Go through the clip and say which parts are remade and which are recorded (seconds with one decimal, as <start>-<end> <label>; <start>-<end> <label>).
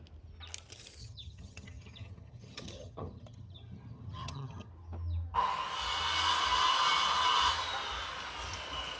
0.0-1.0 recorded; 1.0-4.7 remade; 4.7-9.0 recorded